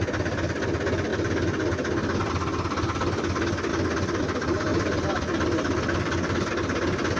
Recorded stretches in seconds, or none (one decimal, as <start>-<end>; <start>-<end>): 0.0-3.7; 4.2-4.7; 6.5-7.2